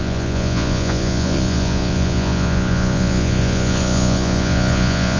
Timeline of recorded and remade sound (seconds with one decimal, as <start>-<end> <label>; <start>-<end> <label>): 0.0-5.2 remade